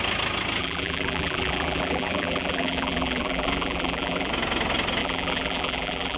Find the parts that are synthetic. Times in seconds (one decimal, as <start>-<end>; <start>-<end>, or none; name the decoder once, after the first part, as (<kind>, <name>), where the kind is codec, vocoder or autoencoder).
0.6-4.3 (vocoder, BigVGAN v2); 5.0-6.2